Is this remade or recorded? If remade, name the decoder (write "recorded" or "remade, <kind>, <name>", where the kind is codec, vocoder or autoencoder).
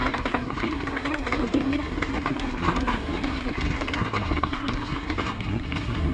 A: remade, codec, SNAC